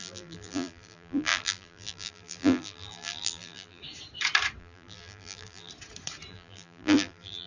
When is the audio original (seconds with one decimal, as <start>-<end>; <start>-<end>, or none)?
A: 3.8-4.6; 5.7-6.3